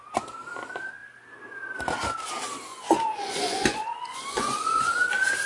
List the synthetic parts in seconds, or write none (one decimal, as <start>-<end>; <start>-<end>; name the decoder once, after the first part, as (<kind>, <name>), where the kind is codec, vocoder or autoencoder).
2.7-4.9 (vocoder, Vocos)